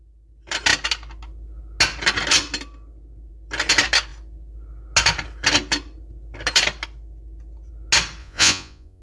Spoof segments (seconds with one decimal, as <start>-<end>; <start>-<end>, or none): 8.2-9.0